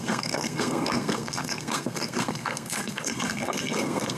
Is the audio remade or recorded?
remade